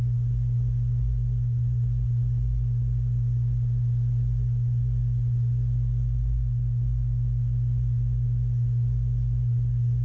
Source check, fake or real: real